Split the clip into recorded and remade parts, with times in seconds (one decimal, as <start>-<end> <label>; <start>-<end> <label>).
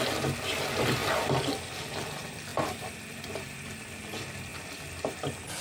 0.0-2.5 recorded; 2.5-3.8 remade; 3.8-5.6 recorded